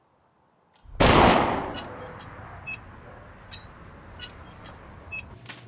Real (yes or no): yes